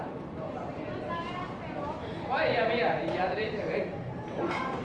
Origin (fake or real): fake